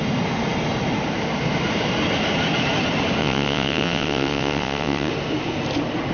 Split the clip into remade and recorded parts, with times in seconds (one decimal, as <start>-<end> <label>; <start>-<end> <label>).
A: 0.0-3.2 recorded; 3.2-5.1 remade; 5.1-6.1 recorded